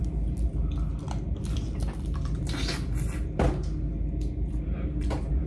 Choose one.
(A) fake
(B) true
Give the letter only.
B